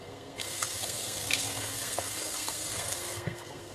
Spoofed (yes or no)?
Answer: yes